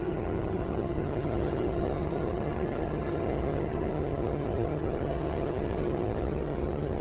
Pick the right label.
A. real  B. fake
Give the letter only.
B